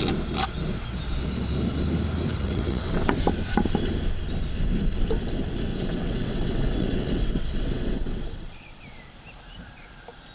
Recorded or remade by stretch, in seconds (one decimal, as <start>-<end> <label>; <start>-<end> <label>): 0.0-2.3 recorded; 2.3-3.1 remade; 3.1-5.7 recorded; 5.7-9.0 remade; 9.0-10.3 recorded